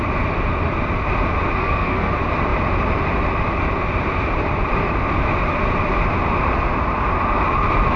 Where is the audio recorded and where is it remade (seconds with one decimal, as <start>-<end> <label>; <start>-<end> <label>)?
0.0-1.6 recorded; 1.6-2.1 remade; 2.1-8.0 recorded